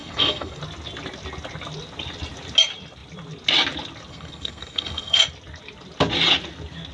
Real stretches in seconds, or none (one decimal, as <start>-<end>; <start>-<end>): 0.6-4.1; 5.2-6.9